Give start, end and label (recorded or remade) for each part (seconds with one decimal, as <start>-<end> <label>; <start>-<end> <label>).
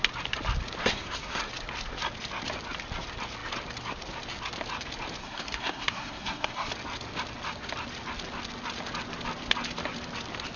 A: 0.0-0.8 recorded; 0.8-1.4 remade; 1.4-5.2 recorded; 5.2-6.7 remade; 6.7-10.6 recorded